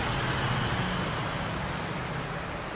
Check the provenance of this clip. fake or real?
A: real